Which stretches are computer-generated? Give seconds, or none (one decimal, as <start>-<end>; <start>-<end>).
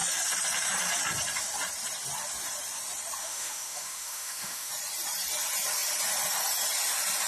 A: 3.2-4.7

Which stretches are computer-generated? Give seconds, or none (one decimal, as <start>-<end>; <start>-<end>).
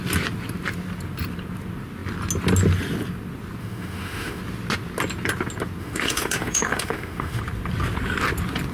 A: 3.6-4.4; 5.8-7.4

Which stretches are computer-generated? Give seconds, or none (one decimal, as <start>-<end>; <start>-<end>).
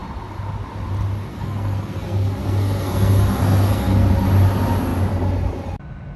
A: 1.3-4.1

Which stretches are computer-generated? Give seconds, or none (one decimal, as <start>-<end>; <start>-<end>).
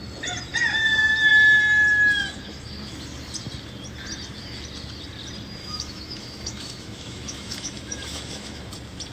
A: 5.6-8.7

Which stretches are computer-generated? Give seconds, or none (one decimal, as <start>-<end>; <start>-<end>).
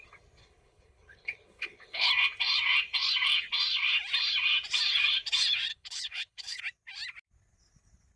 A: 0.4-2.1; 5.7-6.6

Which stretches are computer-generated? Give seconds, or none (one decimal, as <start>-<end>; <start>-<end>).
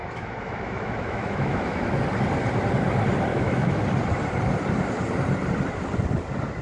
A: 0.0-2.0; 3.3-3.8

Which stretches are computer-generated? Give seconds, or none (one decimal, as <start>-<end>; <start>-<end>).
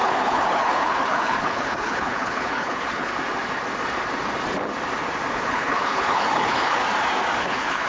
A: 0.0-3.1; 5.3-6.8; 7.4-7.9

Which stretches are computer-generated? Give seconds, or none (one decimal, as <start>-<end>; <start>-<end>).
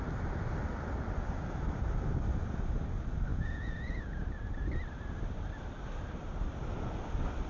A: 3.3-4.2